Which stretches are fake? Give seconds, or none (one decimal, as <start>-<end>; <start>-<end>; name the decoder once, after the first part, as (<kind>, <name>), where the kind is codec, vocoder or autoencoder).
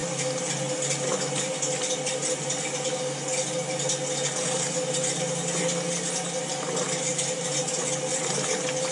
none